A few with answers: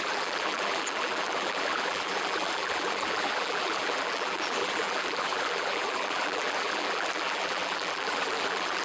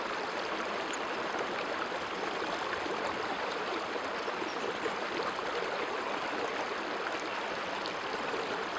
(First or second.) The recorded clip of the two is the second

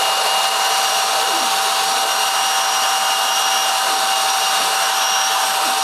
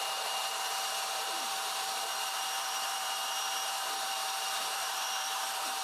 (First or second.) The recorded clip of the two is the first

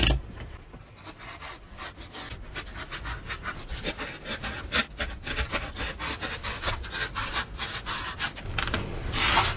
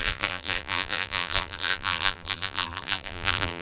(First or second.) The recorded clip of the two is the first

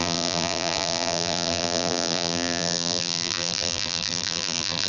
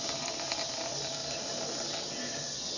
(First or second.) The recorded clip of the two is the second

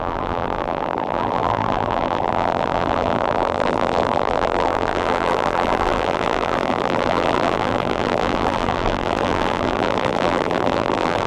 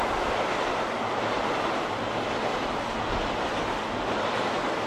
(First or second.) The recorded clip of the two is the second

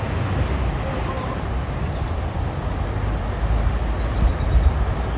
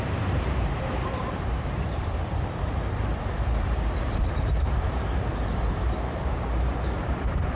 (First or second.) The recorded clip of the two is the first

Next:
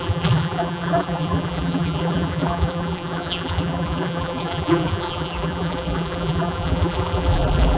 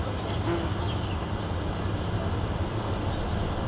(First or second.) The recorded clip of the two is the second